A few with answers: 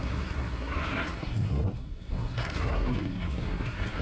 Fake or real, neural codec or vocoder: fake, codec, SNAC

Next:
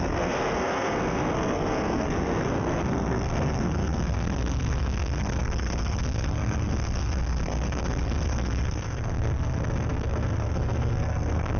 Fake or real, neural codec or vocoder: fake, codec, SNAC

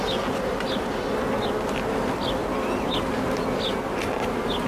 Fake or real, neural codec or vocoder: real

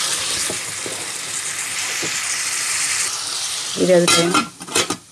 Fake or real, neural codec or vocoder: real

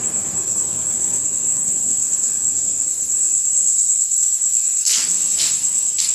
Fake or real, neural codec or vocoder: fake, codec, SNAC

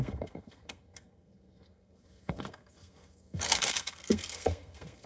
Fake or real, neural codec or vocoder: fake, codec, SNAC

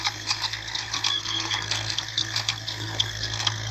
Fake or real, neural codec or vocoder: fake, codec, SNAC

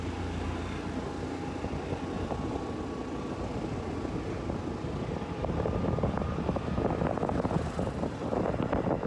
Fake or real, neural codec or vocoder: real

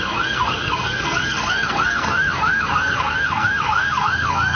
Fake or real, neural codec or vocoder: fake, codec, SNAC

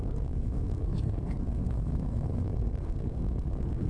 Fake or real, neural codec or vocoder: fake, codec, SNAC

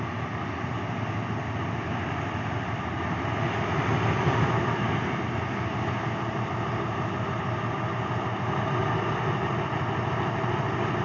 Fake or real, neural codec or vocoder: real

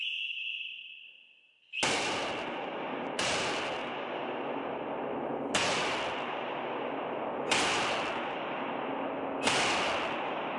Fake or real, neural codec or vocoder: real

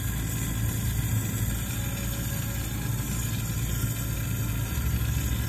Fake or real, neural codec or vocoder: real